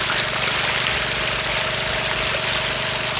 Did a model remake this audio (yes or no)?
no